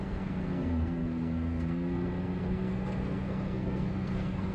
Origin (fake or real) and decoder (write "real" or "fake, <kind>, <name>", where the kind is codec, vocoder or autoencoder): fake, codec, SNAC